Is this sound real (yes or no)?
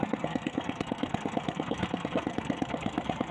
no